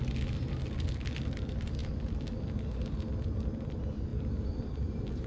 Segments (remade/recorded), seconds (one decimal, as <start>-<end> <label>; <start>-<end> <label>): 0.0-5.3 recorded